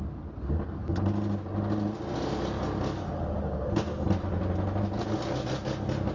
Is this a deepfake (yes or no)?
no